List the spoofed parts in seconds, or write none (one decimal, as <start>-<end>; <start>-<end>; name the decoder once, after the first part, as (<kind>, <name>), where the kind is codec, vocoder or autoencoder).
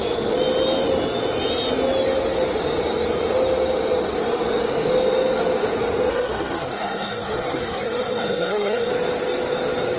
6.1-8.9 (codec, SNAC)